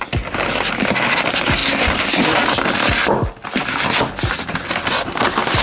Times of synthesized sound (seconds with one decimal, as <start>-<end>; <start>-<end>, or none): none